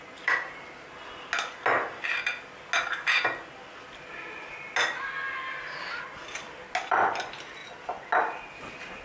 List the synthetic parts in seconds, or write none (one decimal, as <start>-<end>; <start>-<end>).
none